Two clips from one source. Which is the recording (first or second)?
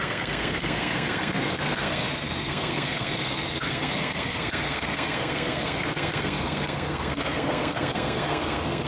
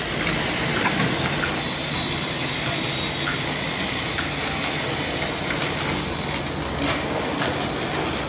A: second